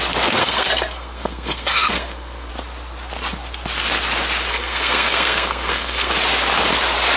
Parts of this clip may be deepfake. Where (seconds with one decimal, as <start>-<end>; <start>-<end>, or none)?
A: 0.4-2.5; 4.5-6.1